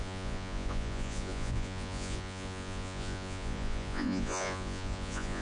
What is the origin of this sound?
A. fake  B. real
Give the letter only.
A